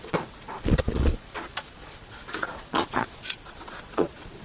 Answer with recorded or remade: remade